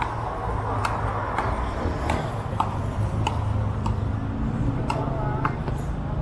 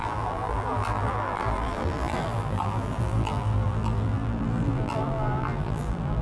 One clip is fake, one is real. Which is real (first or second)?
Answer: first